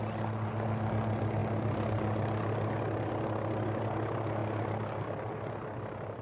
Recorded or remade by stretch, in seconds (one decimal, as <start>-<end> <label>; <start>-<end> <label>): 0.0-6.2 recorded